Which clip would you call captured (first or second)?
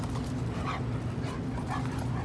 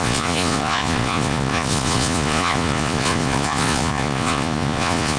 first